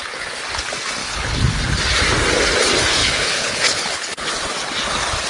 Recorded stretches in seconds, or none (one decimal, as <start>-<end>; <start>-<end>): 0.0-1.0; 1.6-3.0; 4.3-5.3

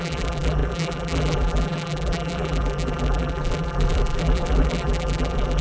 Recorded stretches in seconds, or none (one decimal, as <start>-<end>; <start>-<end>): none

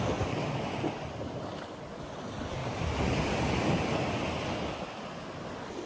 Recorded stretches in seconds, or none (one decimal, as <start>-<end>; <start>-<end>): 0.0-5.9

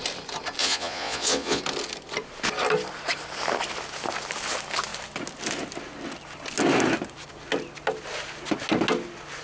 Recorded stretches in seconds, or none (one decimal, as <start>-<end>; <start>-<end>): 0.0-0.6; 1.6-9.4

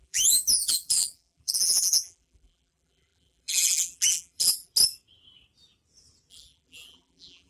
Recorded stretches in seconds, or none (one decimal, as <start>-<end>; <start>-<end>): 4.7-6.3

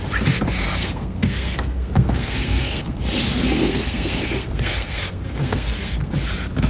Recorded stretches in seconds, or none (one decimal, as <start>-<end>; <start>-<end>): 0.0-0.8; 3.0-3.6; 6.1-6.7

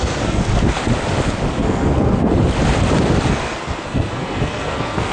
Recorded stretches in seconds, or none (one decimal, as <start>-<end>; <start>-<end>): 0.5-1.5; 2.3-3.3

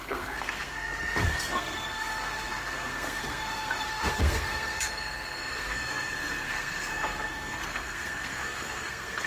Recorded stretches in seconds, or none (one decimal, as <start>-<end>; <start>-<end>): none